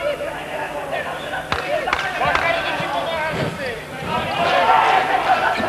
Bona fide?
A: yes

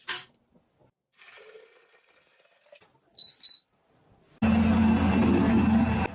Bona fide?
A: yes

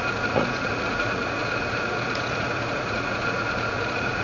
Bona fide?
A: no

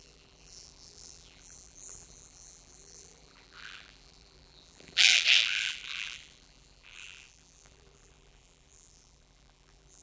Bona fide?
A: no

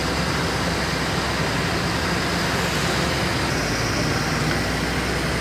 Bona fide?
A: yes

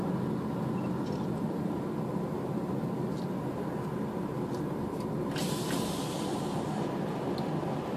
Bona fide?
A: yes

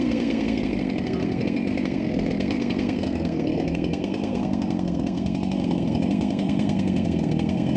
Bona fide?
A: no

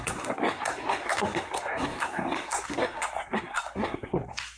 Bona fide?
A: no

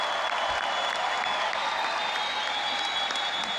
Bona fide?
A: yes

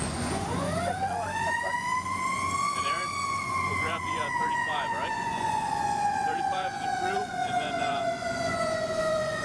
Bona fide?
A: no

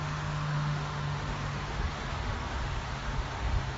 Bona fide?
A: no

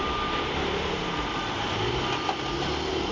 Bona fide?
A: yes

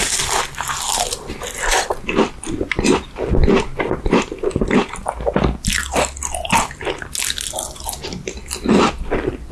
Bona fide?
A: yes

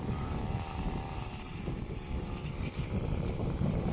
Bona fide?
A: no